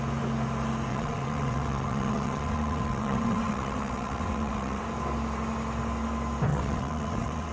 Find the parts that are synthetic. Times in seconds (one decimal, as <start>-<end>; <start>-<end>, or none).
0.9-4.8; 6.5-7.5